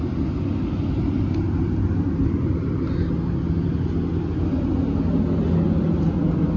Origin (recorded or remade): recorded